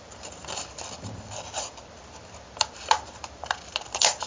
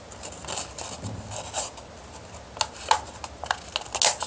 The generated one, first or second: first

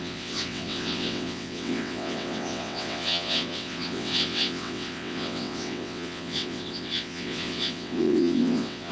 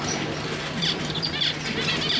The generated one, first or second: first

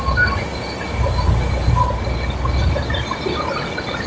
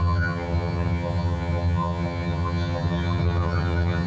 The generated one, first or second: second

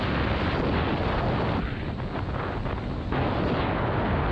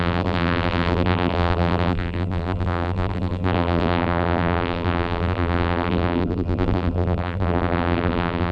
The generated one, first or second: second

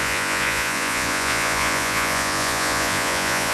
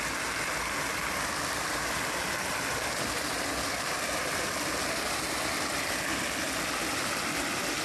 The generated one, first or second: first